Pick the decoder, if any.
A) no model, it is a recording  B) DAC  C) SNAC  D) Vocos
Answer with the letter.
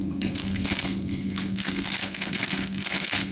C